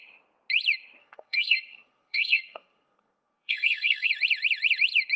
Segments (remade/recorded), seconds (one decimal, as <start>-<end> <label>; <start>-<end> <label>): 0.0-1.0 recorded; 1.0-4.1 remade; 4.1-5.2 recorded